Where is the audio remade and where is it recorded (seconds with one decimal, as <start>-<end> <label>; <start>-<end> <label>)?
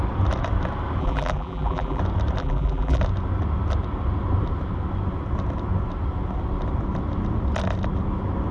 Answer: 0.0-1.0 recorded; 1.0-2.0 remade; 2.0-2.4 recorded; 2.4-3.0 remade; 3.0-8.5 recorded